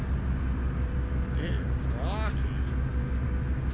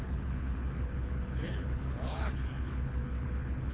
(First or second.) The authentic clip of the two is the first